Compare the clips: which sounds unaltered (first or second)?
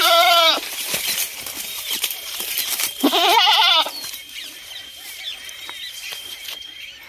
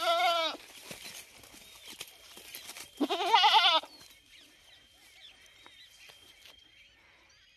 second